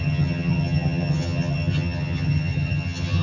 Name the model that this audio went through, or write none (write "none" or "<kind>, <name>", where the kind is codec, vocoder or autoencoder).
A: vocoder, HiFi-GAN